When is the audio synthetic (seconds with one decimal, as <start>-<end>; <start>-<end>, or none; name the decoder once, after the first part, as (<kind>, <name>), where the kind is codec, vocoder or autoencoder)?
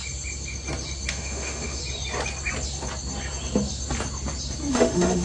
1.1-1.8 (autoencoder, DAC-VAE); 4.7-5.2